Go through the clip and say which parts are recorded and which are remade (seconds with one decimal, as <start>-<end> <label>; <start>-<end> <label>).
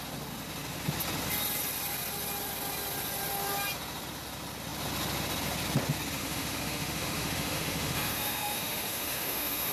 0.0-6.2 recorded; 6.2-9.7 remade